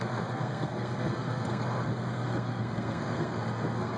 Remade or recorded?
remade